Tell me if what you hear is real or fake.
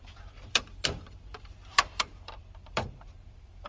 fake